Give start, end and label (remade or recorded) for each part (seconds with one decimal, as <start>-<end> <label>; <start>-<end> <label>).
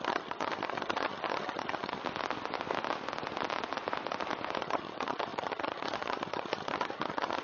0.0-2.0 remade; 2.0-4.6 recorded; 4.6-7.4 remade